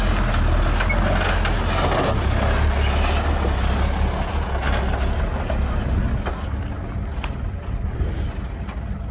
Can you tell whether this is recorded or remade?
recorded